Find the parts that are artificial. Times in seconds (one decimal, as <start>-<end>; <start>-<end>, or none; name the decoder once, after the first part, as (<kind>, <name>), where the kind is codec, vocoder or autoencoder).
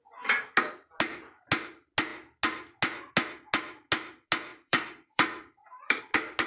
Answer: 4.5-6.0 (vocoder, BigVGAN v2)